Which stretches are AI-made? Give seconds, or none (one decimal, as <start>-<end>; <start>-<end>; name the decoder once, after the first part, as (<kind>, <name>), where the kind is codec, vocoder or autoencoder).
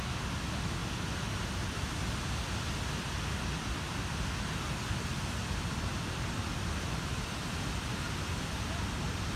5.9-8.0 (vocoder, BigVGAN v2)